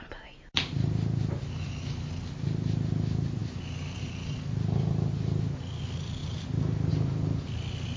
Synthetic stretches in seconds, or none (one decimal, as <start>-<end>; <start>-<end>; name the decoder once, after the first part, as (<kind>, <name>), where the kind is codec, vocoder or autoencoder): none